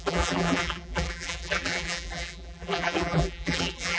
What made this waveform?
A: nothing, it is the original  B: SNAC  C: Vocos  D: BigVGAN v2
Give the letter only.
D